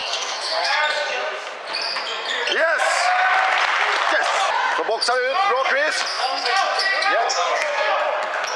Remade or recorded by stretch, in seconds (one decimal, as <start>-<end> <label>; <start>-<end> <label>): 0.0-0.8 remade; 0.8-6.1 recorded; 6.1-6.6 remade; 6.6-7.2 recorded; 7.2-7.9 remade; 7.9-8.6 recorded